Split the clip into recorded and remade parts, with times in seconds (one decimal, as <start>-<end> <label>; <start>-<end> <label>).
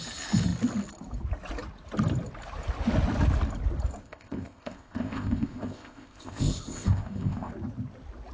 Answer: 0.0-4.0 recorded; 4.0-7.5 remade; 7.5-8.3 recorded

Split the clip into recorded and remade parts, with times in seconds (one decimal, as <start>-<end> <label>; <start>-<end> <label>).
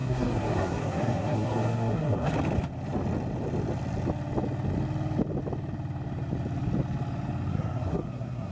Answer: 0.0-2.3 remade; 2.3-7.5 recorded; 7.5-8.5 remade